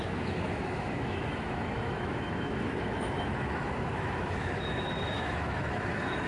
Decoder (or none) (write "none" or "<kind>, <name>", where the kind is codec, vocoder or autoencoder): autoencoder, DAC-VAE